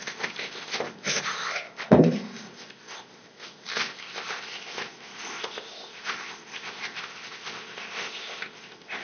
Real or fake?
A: fake